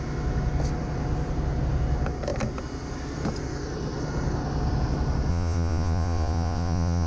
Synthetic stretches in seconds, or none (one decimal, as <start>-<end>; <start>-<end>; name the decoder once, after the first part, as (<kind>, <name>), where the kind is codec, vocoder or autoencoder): 5.3-7.1 (vocoder, Vocos)